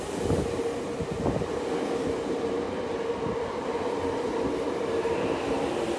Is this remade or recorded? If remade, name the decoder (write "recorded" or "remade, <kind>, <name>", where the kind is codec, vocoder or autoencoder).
recorded